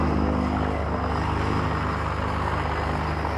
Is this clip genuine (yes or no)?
yes